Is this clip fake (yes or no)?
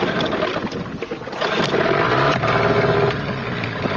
no